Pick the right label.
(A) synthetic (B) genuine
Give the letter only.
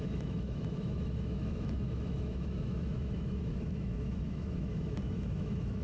A